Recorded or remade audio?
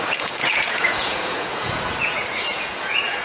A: remade